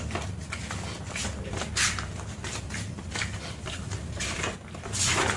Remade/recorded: recorded